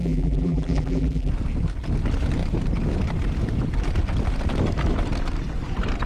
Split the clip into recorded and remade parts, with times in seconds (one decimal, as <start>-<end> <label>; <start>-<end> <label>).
0.0-1.3 remade; 1.3-6.1 recorded